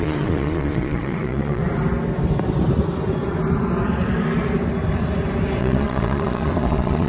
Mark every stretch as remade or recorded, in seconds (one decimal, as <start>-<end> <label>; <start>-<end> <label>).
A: 0.0-1.6 remade; 1.6-5.6 recorded; 5.6-7.1 remade